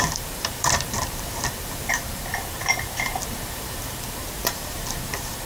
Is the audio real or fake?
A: fake